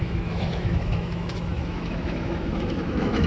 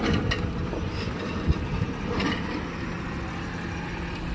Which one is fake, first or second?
first